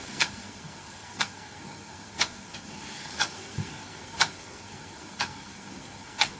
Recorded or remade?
remade